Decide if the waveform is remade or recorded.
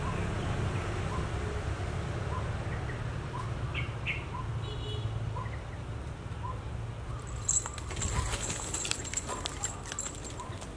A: recorded